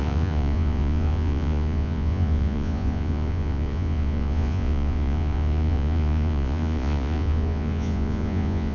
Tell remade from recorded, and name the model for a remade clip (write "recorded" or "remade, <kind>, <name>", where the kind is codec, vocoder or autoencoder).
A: remade, vocoder, Vocos